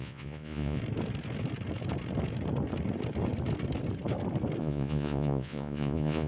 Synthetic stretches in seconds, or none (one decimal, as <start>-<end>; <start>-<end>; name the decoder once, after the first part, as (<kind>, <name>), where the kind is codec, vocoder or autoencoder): 0.0-0.8 (vocoder, Vocos); 4.6-6.3